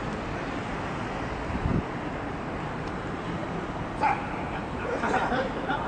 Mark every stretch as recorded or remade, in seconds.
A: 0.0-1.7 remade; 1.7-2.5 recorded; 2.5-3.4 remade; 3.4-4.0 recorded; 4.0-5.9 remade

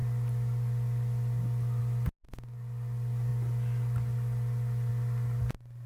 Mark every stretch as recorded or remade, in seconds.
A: 0.0-5.9 recorded

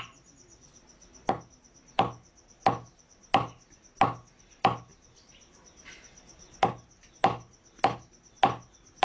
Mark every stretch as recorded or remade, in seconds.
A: 0.0-4.9 recorded; 4.9-6.7 remade; 6.7-9.0 recorded

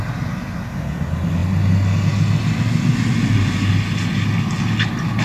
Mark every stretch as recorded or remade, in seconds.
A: 0.0-5.2 recorded

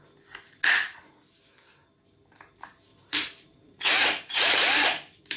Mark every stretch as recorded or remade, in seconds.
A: 0.0-2.9 recorded; 2.9-3.9 remade; 3.9-5.4 recorded

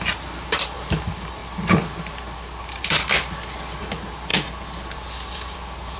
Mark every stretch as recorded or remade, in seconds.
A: 0.0-1.4 remade; 1.4-3.8 recorded; 3.8-4.3 remade; 4.3-5.3 recorded; 5.3-6.0 remade

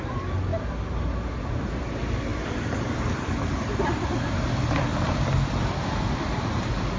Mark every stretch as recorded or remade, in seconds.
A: 0.0-2.3 recorded; 2.3-6.4 remade; 6.4-7.0 recorded